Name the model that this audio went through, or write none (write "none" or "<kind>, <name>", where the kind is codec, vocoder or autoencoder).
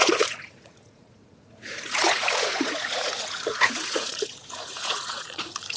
vocoder, Vocos